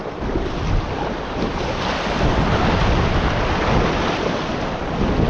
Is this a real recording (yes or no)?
yes